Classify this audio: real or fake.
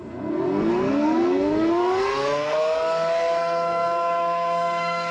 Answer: fake